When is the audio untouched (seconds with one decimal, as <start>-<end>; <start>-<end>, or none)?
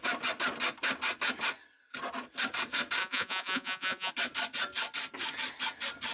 0.0-3.0; 4.1-6.1